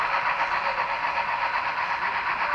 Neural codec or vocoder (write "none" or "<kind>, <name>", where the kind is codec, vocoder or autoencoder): none